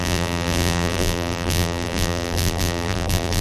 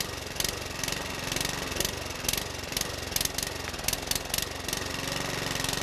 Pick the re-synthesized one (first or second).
first